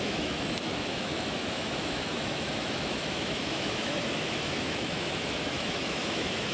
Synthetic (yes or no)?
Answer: yes